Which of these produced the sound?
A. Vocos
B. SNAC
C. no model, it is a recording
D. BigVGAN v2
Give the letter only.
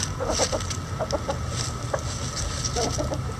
C